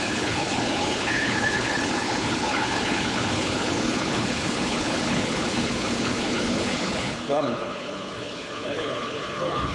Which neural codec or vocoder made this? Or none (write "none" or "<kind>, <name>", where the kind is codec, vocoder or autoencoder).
codec, HILCodec